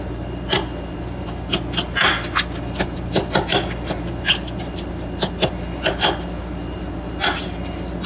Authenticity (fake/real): real